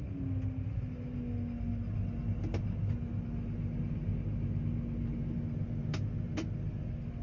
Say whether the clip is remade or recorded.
recorded